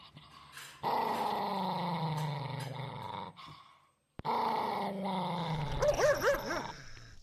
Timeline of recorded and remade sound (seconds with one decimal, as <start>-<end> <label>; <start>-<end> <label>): 0.0-7.2 recorded